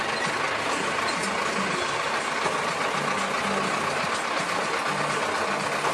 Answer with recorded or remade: recorded